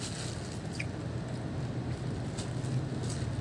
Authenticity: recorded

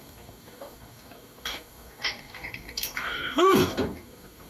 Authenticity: remade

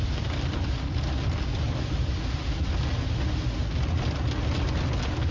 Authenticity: recorded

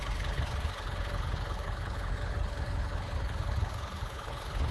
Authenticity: remade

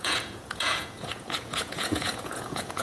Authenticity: remade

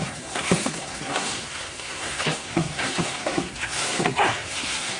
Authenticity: remade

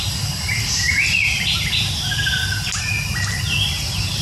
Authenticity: recorded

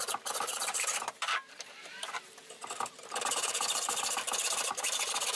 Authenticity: remade